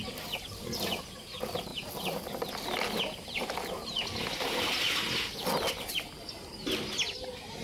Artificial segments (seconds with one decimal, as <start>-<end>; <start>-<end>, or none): none